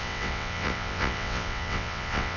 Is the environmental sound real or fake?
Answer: fake